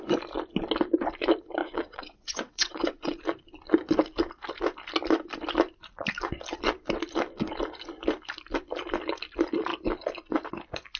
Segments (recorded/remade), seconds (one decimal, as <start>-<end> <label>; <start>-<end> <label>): 0.0-1.6 recorded; 1.6-3.2 remade; 3.2-11.0 recorded